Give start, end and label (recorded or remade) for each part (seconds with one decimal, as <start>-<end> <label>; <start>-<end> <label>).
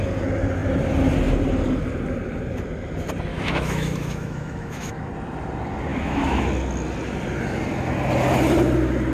0.0-3.3 recorded; 3.3-5.1 remade; 5.1-5.9 recorded; 5.9-6.5 remade; 6.5-9.1 recorded